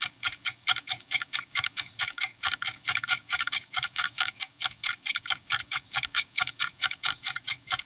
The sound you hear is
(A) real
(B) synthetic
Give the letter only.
B